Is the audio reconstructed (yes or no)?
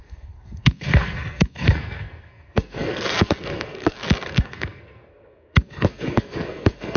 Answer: yes